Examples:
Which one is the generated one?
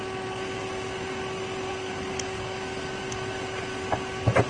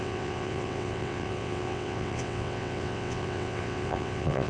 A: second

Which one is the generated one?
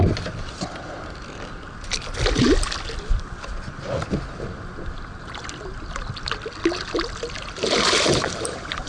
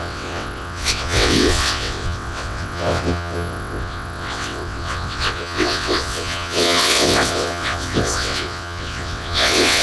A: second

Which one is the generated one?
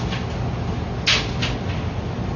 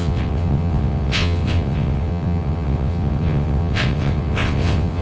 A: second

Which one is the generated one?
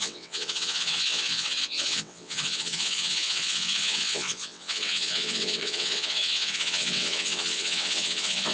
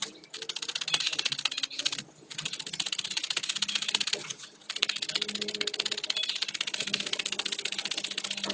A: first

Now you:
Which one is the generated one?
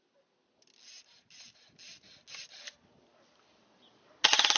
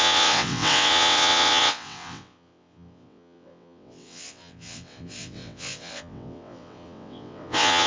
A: second